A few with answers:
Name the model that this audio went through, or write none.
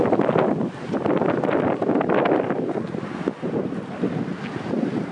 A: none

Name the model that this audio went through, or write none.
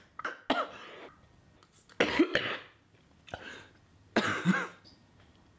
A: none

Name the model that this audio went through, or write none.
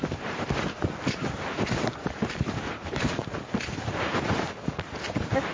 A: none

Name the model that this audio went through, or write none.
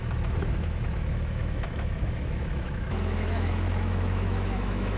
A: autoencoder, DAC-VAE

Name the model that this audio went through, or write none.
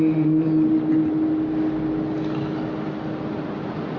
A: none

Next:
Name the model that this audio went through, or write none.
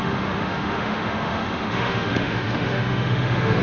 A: autoencoder, DAC-VAE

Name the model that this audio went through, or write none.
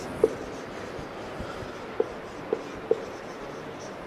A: none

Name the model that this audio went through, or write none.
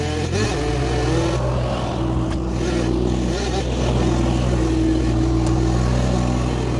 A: none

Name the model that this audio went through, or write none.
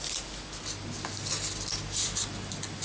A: none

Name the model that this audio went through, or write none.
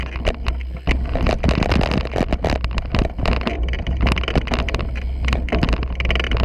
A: none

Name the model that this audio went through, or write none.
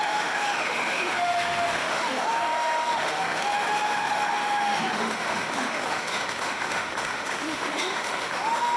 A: autoencoder, DAC-VAE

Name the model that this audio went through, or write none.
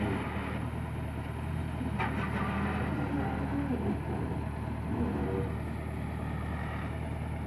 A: none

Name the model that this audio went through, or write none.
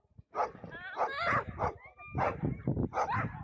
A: none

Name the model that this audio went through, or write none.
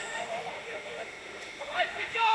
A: autoencoder, DAC-VAE